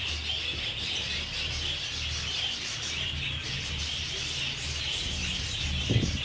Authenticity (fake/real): real